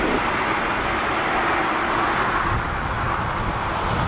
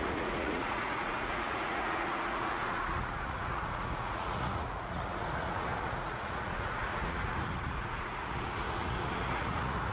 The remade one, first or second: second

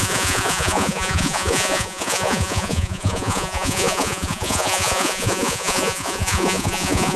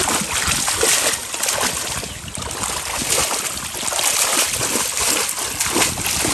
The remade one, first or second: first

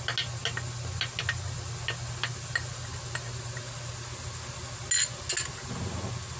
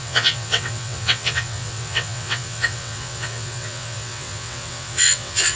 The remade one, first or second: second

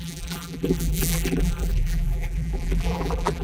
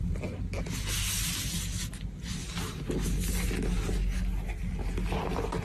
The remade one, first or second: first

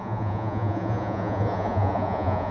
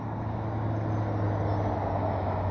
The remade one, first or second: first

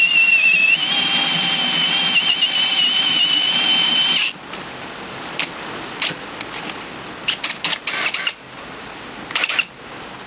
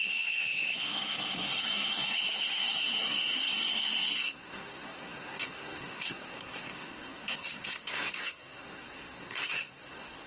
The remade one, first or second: second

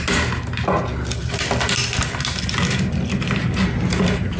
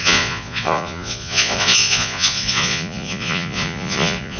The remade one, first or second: second